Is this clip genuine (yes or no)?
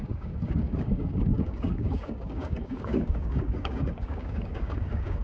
no